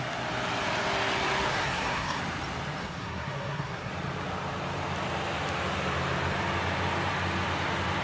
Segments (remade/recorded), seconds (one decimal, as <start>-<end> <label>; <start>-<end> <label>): 0.0-1.5 recorded; 1.5-2.2 remade; 2.2-2.8 recorded; 2.8-3.9 remade; 3.9-8.0 recorded